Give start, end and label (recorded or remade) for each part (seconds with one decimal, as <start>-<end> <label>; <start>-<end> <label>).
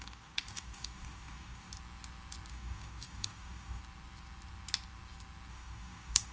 0.0-1.7 remade; 1.7-2.5 recorded; 2.5-3.8 remade; 3.8-5.5 recorded; 5.5-6.3 remade